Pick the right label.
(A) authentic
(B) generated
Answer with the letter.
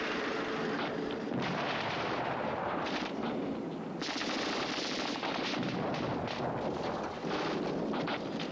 A